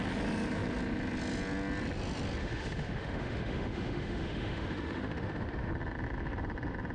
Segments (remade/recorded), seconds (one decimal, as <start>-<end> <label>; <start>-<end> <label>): 0.0-2.4 recorded; 2.4-5.7 remade; 5.7-6.9 recorded